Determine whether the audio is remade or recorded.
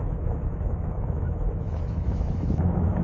remade